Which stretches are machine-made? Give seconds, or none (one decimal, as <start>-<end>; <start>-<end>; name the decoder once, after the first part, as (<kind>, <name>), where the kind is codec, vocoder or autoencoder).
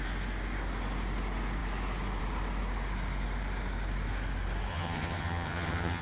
4.7-6.0 (vocoder, HiFi-GAN)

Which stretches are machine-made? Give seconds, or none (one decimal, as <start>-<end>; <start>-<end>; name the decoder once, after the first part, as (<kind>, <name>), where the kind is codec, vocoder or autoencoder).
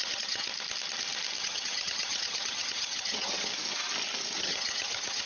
0.0-0.5 (vocoder, HiFi-GAN); 1.4-3.5; 4.4-5.3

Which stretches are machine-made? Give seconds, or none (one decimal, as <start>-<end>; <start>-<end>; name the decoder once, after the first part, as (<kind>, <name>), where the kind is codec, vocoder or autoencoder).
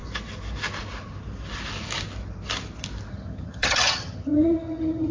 3.1-5.1 (vocoder, HiFi-GAN)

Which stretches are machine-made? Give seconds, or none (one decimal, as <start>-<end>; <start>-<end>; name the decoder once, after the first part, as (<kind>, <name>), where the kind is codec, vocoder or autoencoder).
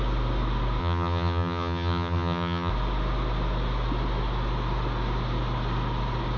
0.8-2.7 (vocoder, HiFi-GAN)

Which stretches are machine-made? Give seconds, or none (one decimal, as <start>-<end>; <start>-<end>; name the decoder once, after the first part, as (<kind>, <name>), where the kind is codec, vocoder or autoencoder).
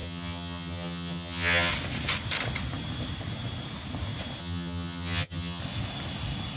0.0-1.7 (vocoder, HiFi-GAN); 4.4-5.6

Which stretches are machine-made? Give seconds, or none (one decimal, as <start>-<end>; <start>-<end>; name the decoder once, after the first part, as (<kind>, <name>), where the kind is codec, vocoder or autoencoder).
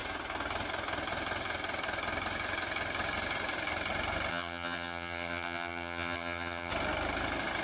4.3-6.7 (vocoder, HiFi-GAN)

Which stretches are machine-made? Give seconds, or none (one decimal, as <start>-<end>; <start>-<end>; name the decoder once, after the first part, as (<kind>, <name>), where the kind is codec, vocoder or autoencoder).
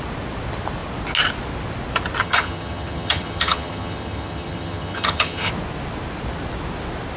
2.2-5.5 (vocoder, HiFi-GAN)